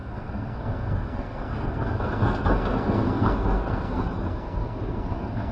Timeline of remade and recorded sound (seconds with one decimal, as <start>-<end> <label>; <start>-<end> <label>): 0.0-5.5 remade